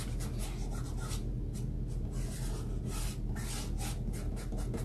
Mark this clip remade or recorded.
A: recorded